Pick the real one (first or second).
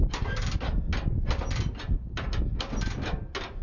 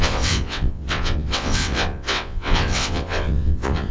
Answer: first